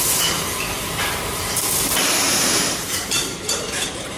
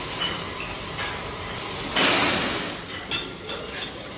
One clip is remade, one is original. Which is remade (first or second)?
first